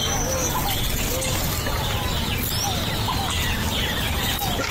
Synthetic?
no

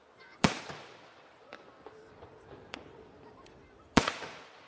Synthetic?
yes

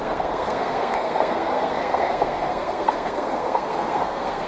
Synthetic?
yes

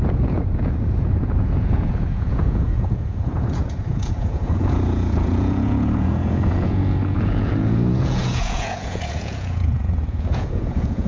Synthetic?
yes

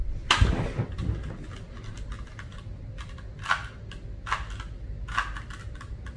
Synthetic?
no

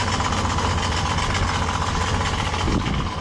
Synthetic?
no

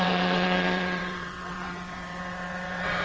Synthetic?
yes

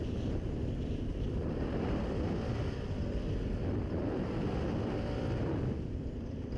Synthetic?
yes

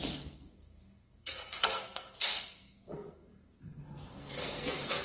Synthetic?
yes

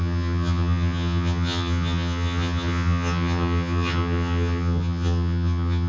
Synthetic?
yes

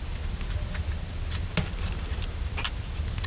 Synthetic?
no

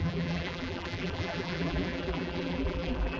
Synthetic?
yes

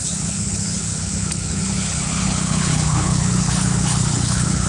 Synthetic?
yes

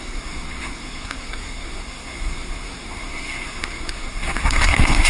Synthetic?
yes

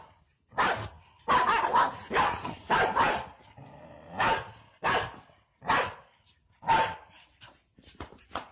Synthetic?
no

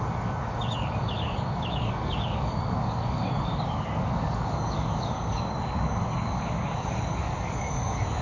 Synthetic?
yes